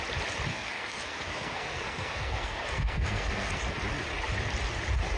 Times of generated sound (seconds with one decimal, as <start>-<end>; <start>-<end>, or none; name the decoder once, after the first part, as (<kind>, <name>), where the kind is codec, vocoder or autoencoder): 0.5-3.6 (codec, SNAC)